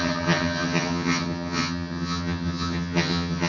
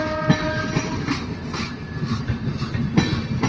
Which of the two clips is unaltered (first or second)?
second